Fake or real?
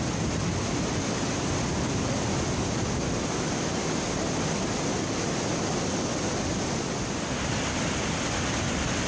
real